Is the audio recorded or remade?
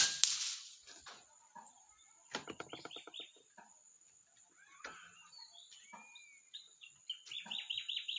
recorded